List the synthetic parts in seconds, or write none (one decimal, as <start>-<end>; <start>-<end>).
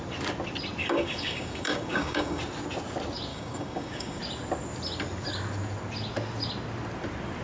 0.8-2.4; 3.3-4.2